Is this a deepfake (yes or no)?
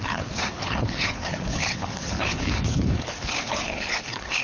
yes